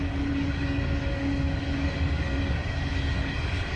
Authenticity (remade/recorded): remade